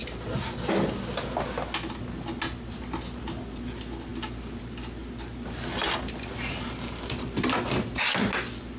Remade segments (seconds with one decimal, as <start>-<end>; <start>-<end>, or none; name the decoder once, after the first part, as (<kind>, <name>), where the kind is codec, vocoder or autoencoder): none